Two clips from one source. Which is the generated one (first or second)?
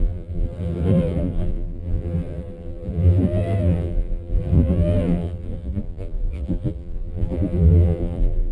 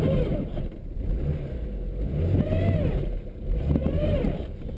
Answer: first